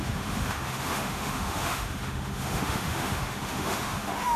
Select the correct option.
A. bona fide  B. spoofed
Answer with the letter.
B